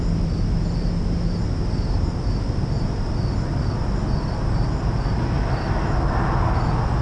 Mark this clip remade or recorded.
recorded